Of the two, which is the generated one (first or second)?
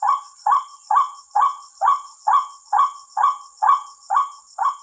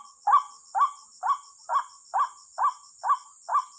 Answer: first